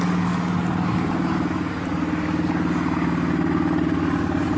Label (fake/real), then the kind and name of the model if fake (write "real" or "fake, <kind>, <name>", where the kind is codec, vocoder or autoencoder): real